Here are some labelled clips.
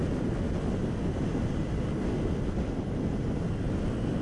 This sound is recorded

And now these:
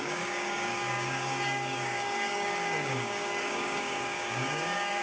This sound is remade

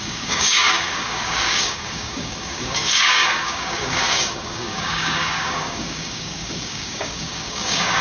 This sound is remade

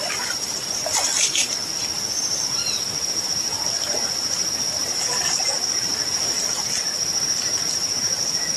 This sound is remade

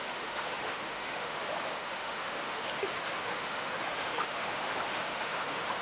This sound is remade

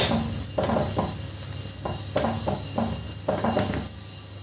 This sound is recorded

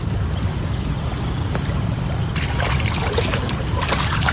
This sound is recorded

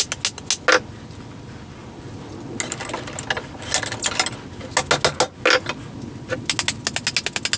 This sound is recorded